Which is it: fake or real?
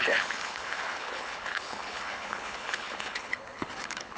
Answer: fake